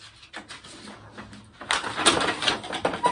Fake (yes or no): no